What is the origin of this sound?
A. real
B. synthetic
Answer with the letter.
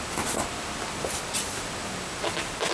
A